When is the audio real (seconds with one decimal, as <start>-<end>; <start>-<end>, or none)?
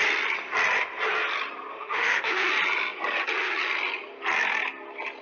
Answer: 0.0-1.7; 2.5-5.2